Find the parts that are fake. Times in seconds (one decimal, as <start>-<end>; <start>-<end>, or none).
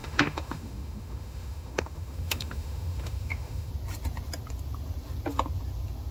0.0-3.7